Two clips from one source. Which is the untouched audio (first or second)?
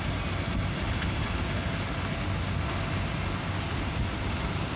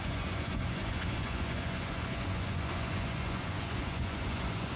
first